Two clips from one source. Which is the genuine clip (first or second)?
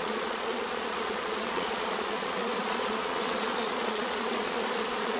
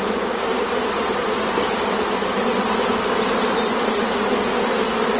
second